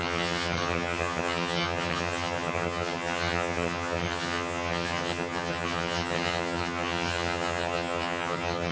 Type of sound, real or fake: fake